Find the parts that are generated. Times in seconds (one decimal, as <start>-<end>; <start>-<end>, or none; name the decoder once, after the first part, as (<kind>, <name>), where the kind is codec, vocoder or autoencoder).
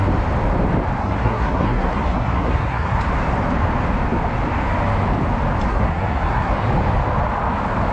1.0-3.0 (codec, SNAC); 5.7-6.5